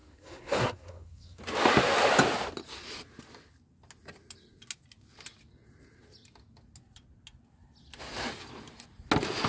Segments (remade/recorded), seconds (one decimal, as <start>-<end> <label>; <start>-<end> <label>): 0.0-1.4 remade; 1.4-9.5 recorded